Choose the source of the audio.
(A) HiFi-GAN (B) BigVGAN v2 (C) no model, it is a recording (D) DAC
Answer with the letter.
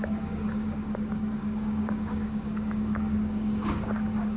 D